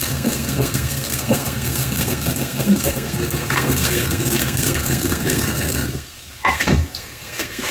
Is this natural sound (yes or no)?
no